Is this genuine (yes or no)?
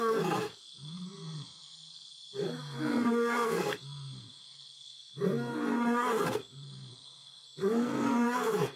no